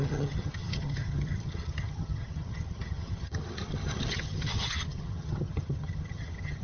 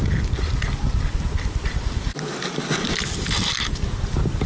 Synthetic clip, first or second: first